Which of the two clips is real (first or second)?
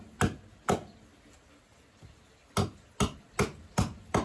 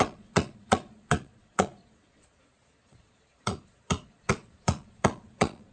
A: first